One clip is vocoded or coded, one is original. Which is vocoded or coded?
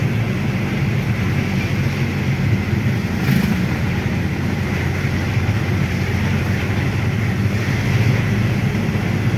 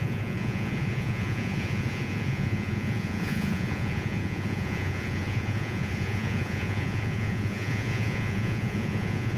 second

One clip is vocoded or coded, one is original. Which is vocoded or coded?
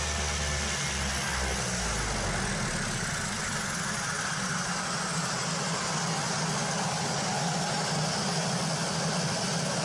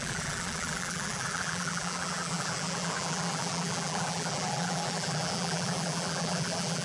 second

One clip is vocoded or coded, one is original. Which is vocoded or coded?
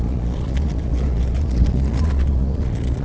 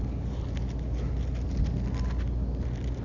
first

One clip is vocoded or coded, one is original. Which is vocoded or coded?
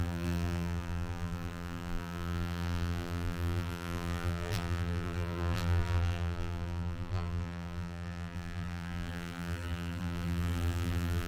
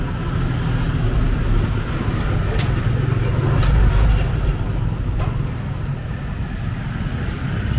first